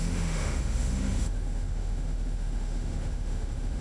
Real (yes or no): no